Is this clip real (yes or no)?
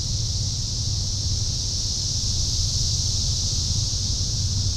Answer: yes